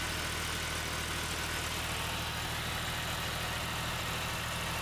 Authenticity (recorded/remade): recorded